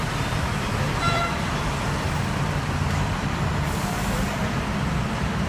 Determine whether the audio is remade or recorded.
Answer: remade